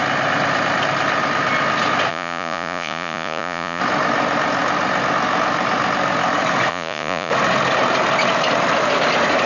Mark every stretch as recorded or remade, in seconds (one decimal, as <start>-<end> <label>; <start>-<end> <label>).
0.0-2.1 recorded; 2.1-3.8 remade; 3.8-6.7 recorded; 6.7-7.3 remade; 7.3-9.5 recorded